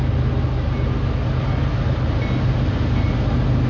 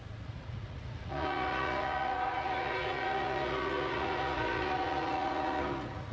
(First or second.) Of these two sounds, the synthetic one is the second